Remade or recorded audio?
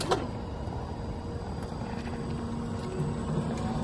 recorded